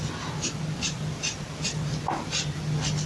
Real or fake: real